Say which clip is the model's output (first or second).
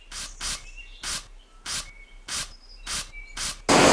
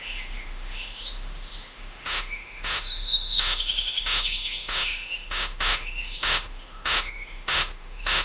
second